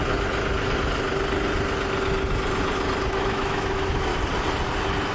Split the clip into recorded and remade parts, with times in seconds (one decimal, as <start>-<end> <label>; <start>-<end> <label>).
0.0-3.1 recorded; 3.1-4.1 remade; 4.1-5.1 recorded

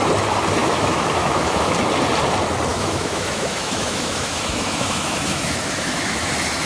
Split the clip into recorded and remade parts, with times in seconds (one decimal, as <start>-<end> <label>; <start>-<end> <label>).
0.0-0.6 recorded; 0.6-1.7 remade; 1.7-2.7 recorded; 2.7-6.3 remade; 6.3-6.7 recorded